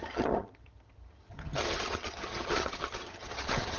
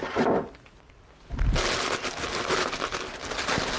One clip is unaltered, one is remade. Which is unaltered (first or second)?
second